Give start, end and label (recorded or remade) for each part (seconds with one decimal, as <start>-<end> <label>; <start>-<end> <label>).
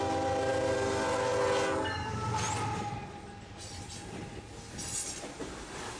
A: 0.0-6.0 recorded